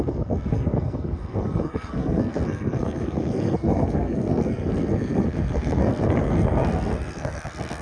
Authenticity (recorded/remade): remade